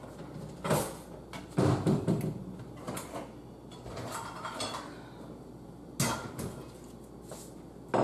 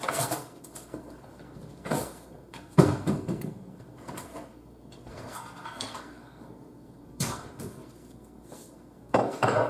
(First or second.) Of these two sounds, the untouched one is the first